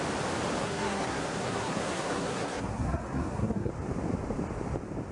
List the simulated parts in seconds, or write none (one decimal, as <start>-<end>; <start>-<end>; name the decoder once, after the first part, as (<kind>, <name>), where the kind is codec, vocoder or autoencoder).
0.6-3.7 (codec, SNAC)